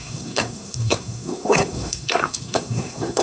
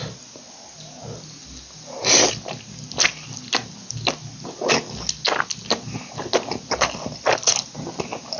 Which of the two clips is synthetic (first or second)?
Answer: first